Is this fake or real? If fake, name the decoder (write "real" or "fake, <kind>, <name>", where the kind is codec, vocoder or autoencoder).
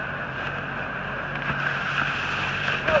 real